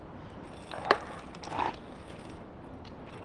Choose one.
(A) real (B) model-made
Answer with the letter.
A